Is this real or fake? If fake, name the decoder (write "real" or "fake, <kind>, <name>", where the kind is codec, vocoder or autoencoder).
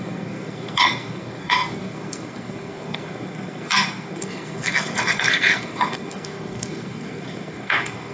fake, codec, SNAC